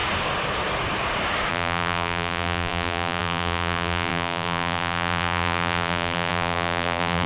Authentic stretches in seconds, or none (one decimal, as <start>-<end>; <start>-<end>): 0.0-1.5

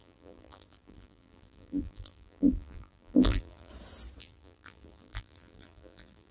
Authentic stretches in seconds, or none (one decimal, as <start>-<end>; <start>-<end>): 3.7-4.2

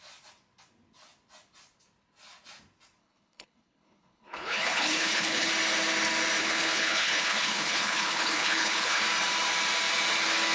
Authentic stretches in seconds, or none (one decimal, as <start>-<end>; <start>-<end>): 0.0-3.0; 5.5-6.4; 9.0-10.5

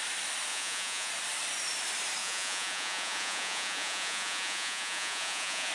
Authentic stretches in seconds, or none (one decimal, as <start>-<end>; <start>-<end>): 0.0-0.5; 1.1-2.2

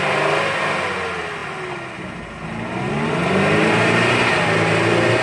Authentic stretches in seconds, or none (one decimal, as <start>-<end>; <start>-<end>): 0.0-5.2

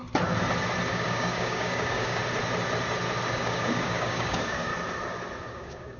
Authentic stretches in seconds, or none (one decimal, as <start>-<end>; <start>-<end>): 0.0-0.9; 2.2-3.3; 4.7-5.4

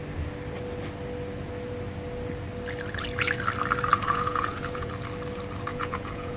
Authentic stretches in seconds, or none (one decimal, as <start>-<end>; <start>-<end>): 0.0-3.9; 4.9-5.7

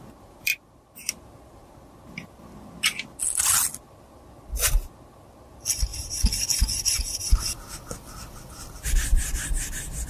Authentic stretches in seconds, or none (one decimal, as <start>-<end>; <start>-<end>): 0.0-10.1